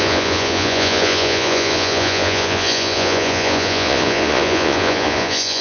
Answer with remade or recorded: remade